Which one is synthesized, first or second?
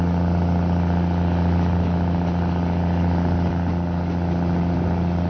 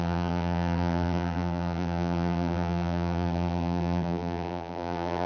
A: second